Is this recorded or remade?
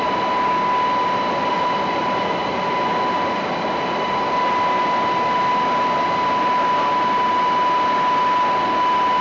recorded